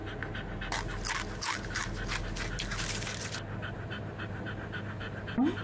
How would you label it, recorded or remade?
recorded